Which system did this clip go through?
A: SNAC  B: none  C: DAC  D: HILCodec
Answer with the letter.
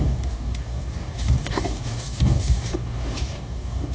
C